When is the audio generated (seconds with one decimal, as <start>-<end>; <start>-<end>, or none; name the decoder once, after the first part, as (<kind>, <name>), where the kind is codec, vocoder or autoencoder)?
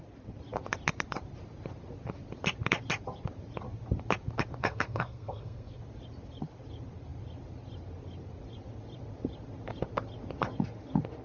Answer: 4.6-5.8 (codec, SNAC)